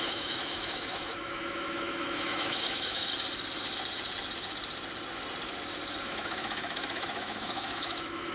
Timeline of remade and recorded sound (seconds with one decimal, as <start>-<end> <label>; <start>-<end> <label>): 0.0-3.1 remade; 3.1-6.0 recorded; 6.0-8.3 remade